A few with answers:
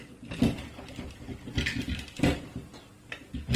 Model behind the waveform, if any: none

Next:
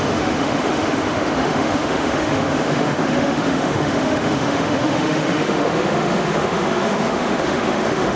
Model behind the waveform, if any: autoencoder, DAC-VAE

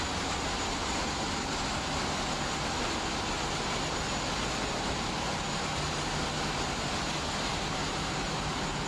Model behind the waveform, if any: none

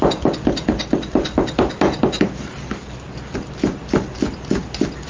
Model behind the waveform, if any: none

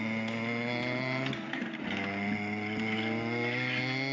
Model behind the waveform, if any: none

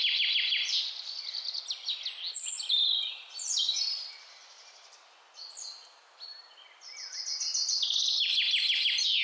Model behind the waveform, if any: none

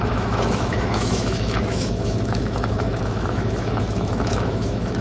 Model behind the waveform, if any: autoencoder, DAC-VAE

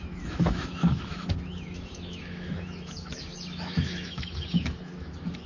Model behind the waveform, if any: autoencoder, DAC-VAE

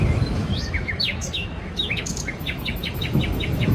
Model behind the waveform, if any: autoencoder, DAC-VAE